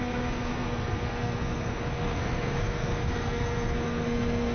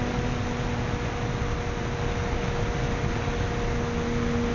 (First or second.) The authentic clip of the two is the second